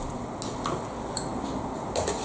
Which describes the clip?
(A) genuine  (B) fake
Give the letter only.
A